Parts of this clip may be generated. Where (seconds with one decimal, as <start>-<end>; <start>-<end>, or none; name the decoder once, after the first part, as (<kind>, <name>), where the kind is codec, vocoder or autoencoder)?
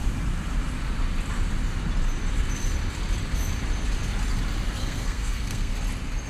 4.8-5.7 (codec, SNAC)